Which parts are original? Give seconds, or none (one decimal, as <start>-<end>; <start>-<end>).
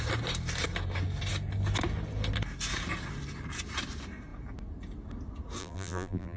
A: 0.0-5.6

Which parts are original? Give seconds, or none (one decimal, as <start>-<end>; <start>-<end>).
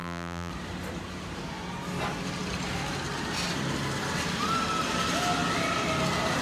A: 0.5-6.4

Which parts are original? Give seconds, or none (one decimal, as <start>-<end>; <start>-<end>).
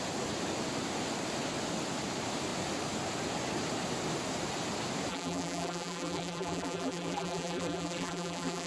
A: 0.0-5.1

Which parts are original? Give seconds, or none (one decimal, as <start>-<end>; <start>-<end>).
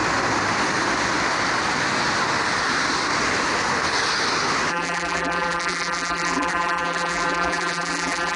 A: 0.0-4.7